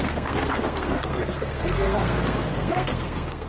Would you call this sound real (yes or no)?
no